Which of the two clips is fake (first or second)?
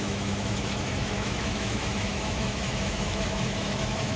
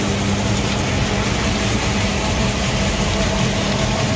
first